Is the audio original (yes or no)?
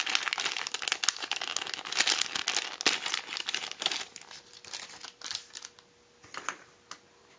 yes